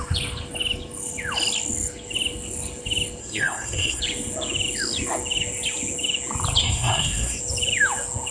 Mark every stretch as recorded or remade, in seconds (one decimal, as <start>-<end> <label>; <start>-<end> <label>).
0.0-3.2 recorded; 3.2-4.0 remade; 4.0-6.6 recorded; 6.6-7.4 remade; 7.4-8.3 recorded